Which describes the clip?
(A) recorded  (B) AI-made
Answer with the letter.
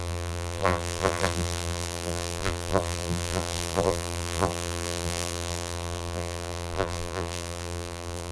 B